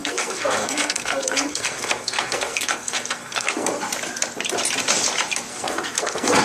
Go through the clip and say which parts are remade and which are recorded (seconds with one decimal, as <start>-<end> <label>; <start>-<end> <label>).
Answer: 0.0-3.8 remade; 3.8-5.5 recorded; 5.5-6.4 remade

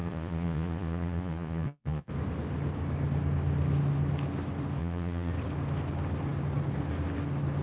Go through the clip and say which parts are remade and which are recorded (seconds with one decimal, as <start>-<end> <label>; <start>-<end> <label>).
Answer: 0.0-2.1 remade; 2.1-4.8 recorded; 4.8-5.3 remade; 5.3-7.6 recorded

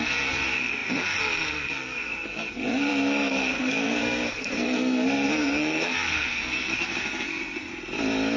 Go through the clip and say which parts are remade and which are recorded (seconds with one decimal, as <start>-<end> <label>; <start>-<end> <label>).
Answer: 0.0-7.7 remade; 7.7-8.4 recorded

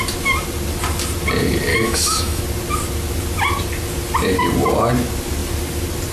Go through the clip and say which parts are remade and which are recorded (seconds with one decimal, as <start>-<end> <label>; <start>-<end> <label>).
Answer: 0.0-1.7 recorded; 1.7-2.4 remade; 2.4-6.1 recorded

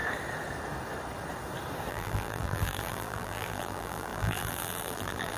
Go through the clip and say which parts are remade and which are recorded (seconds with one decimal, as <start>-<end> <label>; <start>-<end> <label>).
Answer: 0.0-1.9 recorded; 1.9-5.4 remade